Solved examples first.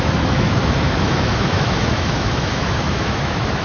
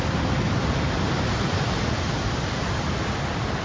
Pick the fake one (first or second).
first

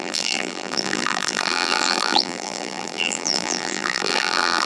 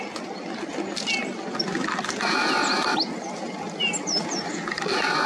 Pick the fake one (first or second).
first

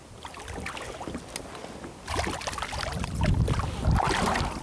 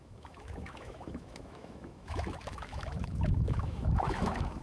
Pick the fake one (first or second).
second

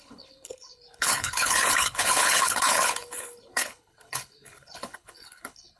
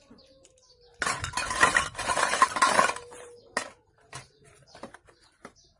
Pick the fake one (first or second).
first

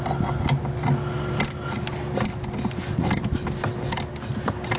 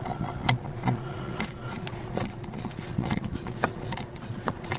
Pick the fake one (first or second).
second